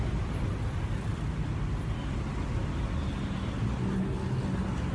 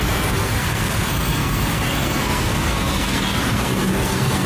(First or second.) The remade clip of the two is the second